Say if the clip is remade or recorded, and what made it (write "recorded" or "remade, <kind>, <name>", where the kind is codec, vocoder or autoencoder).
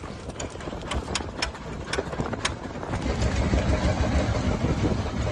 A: recorded